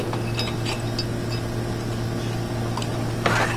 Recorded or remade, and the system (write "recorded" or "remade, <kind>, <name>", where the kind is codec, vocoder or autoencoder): recorded